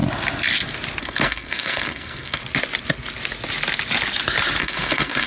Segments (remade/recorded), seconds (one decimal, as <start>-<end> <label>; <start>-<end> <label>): 0.0-1.0 recorded; 1.0-2.4 remade; 2.4-4.6 recorded; 4.6-5.3 remade